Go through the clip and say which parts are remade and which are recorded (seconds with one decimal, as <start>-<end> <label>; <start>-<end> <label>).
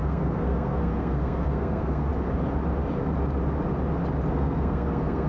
0.0-2.1 remade; 2.1-4.3 recorded; 4.3-5.3 remade